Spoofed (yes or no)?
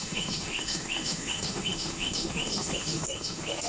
yes